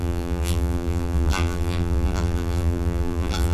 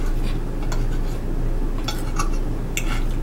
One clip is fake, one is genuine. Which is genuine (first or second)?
second